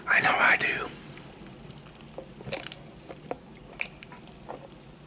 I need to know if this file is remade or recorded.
recorded